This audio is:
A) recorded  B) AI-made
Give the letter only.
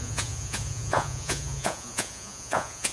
B